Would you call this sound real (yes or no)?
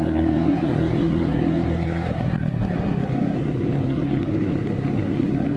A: no